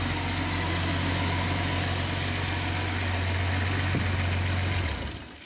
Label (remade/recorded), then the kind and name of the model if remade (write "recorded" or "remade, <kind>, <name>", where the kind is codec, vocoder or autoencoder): recorded